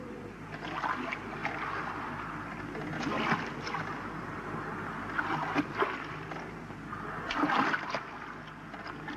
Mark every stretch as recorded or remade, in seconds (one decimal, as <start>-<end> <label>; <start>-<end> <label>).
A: 0.0-9.2 recorded